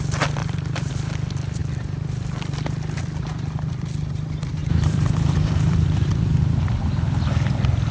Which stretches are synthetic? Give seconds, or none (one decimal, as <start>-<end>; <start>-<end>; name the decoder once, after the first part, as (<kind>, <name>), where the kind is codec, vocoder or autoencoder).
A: 0.4-0.9 (vocoder, BigVGAN v2); 4.6-6.1